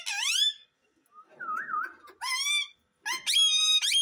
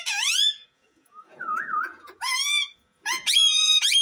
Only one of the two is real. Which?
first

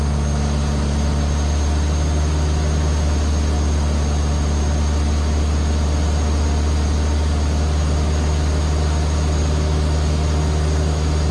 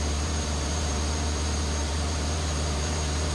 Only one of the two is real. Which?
first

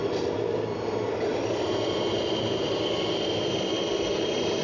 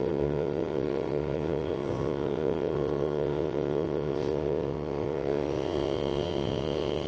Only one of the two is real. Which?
first